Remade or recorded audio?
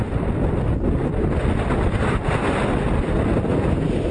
recorded